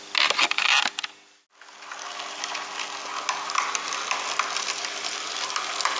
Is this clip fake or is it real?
real